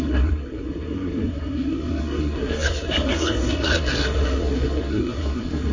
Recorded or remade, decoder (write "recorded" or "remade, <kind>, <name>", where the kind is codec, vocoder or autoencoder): remade, codec, SNAC